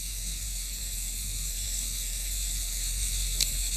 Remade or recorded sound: remade